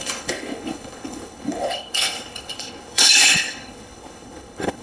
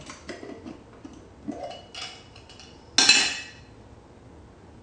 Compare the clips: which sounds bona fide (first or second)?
second